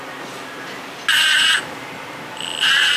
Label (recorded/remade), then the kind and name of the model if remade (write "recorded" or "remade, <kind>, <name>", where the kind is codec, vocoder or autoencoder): recorded